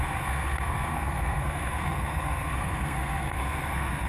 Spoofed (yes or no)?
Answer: yes